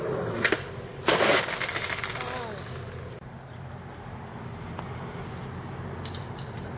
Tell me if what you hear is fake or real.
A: real